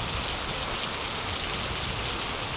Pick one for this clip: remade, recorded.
recorded